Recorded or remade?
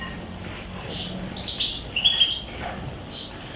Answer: recorded